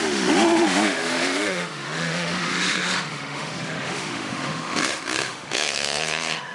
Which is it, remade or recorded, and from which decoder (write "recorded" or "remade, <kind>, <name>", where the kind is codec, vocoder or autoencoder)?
remade, autoencoder, DAC-VAE